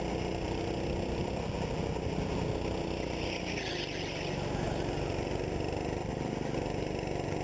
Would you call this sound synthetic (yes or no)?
no